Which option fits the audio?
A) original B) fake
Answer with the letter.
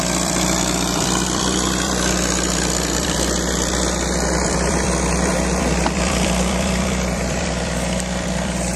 B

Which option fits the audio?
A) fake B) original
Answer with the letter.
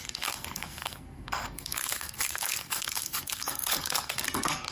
A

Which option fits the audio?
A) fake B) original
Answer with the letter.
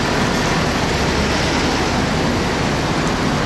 B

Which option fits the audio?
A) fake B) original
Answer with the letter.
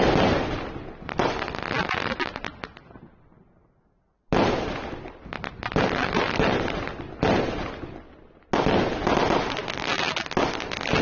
B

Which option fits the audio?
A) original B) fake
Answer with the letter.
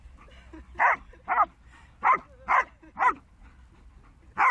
A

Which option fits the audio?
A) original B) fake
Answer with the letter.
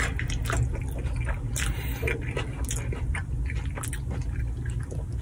A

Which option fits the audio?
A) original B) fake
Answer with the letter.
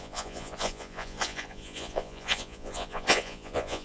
B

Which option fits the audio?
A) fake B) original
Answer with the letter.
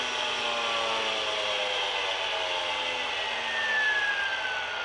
B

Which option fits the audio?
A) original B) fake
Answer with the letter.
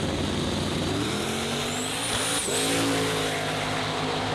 A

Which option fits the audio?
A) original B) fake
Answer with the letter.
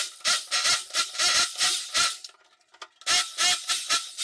A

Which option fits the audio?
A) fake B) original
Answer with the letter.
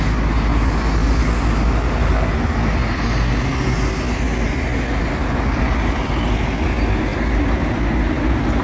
B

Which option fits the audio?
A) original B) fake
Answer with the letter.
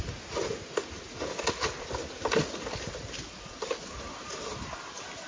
A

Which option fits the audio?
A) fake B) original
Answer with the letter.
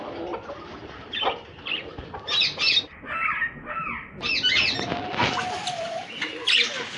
B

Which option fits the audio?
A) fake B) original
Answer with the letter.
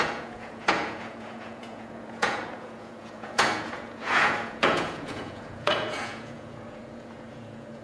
A